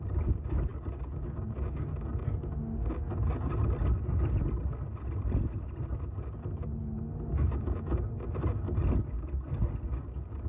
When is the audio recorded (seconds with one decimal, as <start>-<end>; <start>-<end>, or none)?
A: 0.0-10.5